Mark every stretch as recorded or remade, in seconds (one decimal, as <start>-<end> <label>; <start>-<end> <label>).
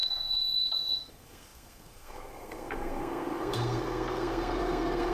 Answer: 0.0-5.1 remade